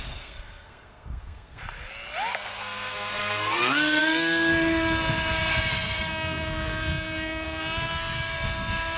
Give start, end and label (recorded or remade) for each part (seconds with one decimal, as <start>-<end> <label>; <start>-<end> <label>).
0.0-1.6 remade; 1.6-2.3 recorded; 2.3-9.0 remade

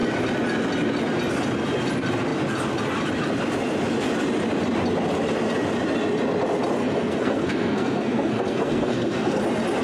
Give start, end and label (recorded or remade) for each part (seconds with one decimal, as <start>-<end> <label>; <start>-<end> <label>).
0.0-6.8 recorded; 6.8-9.4 remade; 9.4-9.8 recorded

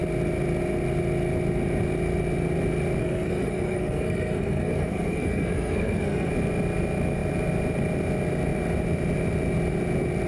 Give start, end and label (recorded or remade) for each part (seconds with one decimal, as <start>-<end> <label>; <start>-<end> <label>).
0.0-3.0 recorded; 3.0-6.3 remade; 6.3-10.3 recorded

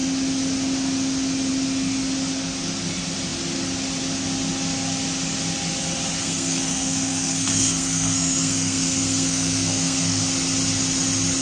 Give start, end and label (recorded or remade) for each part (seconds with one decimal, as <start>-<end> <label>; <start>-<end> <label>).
0.0-6.2 recorded; 6.2-10.2 remade; 10.2-11.4 recorded

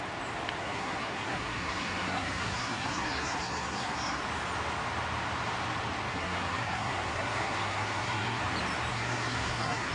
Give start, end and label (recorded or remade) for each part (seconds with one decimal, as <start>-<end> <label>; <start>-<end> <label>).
0.0-0.6 recorded; 0.6-4.2 remade; 4.2-6.1 recorded; 6.1-8.4 remade; 8.4-8.9 recorded; 8.9-9.9 remade

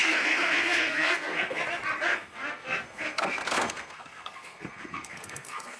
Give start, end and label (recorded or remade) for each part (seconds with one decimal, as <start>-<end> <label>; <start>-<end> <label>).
0.0-1.6 remade; 1.6-2.1 recorded; 2.1-5.8 remade

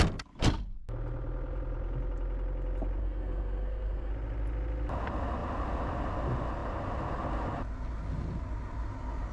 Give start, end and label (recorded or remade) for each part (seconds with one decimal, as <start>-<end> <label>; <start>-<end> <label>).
0.0-3.0 recorded; 3.0-4.1 remade; 4.1-9.3 recorded